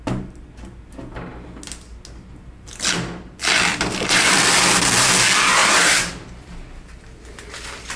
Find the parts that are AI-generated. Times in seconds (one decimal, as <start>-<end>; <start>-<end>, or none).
3.7-4.4; 5.6-7.0